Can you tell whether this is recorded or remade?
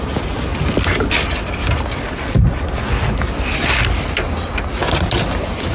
recorded